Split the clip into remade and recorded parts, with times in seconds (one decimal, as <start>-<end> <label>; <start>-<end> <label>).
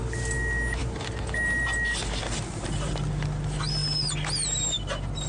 0.0-5.3 recorded